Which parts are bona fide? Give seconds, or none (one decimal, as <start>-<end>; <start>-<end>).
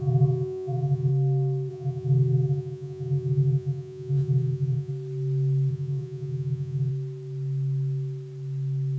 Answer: 1.1-1.7; 4.9-5.7; 6.9-9.0